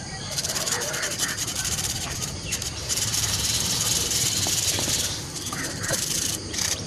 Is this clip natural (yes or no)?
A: no